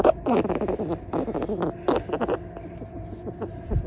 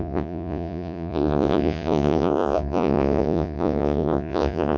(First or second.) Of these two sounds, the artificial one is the second